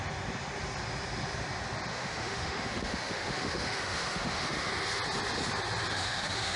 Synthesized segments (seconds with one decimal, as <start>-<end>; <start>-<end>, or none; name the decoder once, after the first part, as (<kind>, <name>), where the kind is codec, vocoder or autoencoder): 1.9-4.7 (autoencoder, DAC-VAE); 5.9-6.6